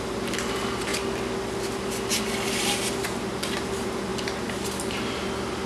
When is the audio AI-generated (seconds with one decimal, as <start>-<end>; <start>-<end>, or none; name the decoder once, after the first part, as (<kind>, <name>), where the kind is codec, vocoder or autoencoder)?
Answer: none